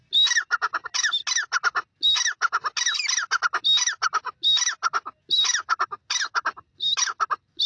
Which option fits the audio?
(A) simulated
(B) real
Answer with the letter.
B